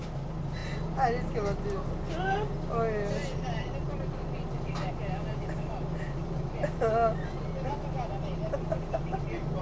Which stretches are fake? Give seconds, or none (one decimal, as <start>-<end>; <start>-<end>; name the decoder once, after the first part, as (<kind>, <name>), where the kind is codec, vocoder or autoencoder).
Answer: none